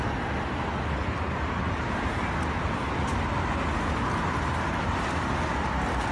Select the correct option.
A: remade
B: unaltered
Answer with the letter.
B